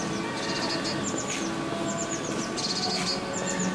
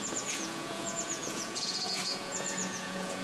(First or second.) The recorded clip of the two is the first